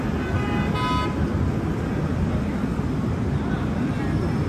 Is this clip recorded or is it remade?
recorded